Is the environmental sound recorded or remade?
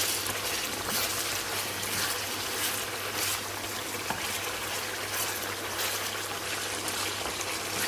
recorded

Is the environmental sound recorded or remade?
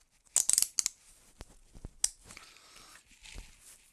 recorded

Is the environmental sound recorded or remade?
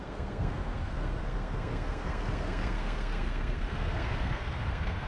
remade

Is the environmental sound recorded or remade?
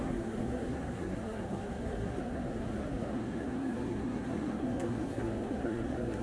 remade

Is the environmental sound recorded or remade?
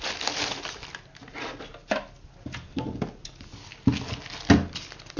recorded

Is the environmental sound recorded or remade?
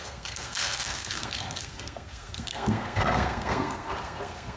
remade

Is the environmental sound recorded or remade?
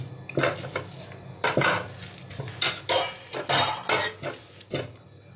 recorded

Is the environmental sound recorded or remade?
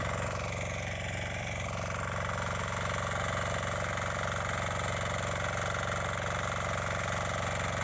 recorded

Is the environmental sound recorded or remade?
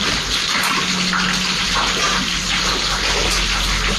recorded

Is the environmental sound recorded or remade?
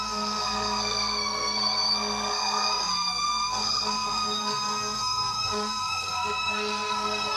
remade